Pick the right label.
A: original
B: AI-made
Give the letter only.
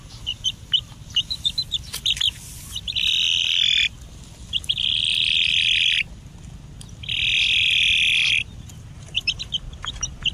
A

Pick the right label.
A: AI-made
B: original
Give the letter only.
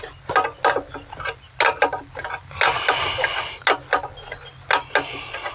B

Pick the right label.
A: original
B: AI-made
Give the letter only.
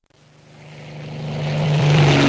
B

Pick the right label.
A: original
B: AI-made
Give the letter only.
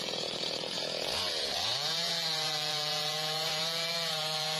B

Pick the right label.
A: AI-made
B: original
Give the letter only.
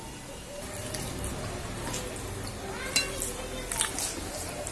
B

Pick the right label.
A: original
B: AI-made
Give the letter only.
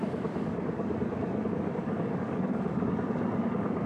B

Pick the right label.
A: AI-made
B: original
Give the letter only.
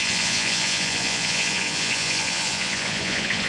A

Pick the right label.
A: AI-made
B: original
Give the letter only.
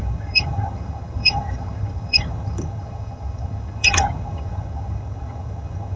A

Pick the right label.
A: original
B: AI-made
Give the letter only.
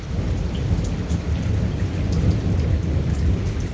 A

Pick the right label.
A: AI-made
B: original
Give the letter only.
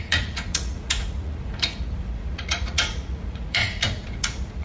A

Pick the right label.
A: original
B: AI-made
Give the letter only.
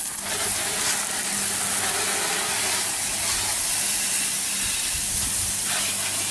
A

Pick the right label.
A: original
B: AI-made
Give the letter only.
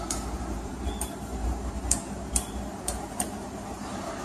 B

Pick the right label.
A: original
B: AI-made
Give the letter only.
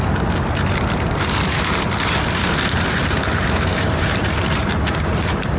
B